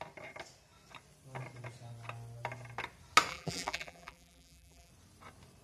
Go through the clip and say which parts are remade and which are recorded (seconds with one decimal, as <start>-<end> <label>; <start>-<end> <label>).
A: 0.0-3.3 recorded; 3.3-4.9 remade; 4.9-5.6 recorded